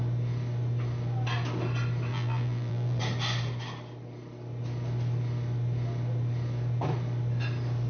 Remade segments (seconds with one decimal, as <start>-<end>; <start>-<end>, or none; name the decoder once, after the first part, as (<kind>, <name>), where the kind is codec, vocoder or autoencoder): 2.1-3.0 (vocoder, BigVGAN v2)